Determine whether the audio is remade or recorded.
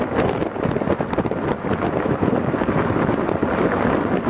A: recorded